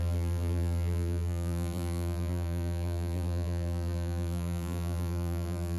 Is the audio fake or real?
fake